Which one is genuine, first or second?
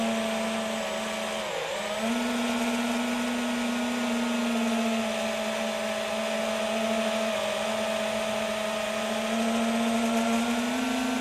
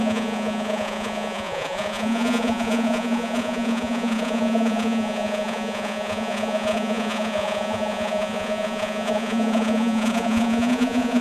first